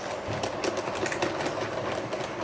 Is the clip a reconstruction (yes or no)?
no